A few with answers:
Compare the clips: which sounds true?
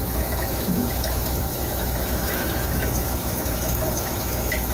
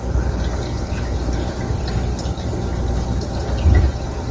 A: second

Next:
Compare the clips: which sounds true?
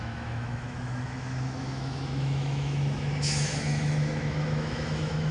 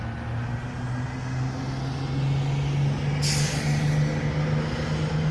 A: second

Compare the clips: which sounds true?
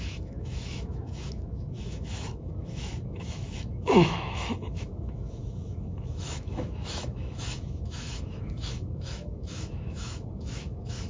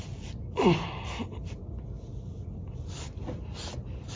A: second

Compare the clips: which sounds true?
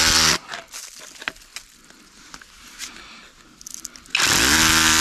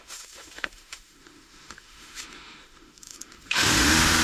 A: first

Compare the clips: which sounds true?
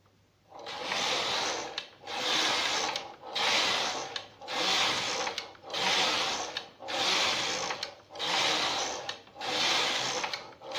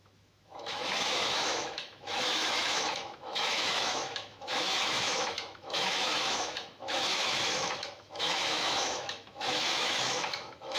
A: first